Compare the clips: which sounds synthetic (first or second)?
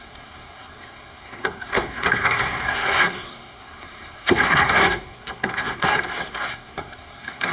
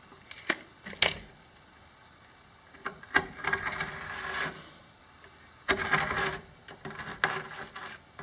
first